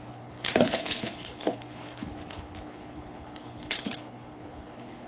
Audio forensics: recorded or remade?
remade